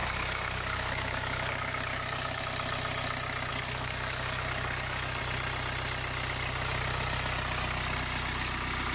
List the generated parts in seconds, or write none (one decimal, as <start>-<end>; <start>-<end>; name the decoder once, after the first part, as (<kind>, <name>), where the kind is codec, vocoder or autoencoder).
0.0-2.4 (codec, DAC); 3.5-5.2